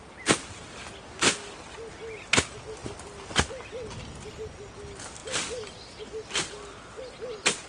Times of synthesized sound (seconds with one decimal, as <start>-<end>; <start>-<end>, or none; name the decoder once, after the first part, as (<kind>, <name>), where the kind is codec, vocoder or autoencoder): none